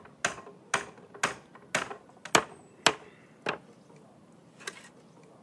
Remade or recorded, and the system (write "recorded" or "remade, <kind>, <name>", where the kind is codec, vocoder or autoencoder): recorded